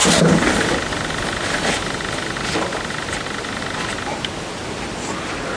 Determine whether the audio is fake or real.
real